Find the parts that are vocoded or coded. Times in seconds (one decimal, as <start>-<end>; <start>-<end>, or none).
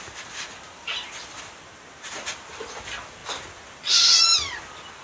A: none